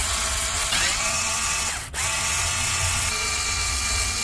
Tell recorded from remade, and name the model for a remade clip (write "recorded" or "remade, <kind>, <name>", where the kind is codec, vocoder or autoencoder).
remade, vocoder, WaveNeXt